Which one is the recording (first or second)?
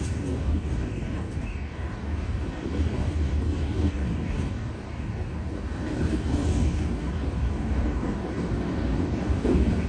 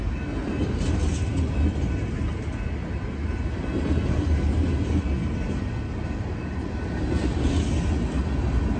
second